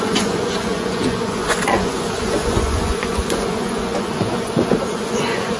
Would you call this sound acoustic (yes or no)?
no